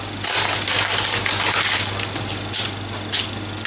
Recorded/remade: recorded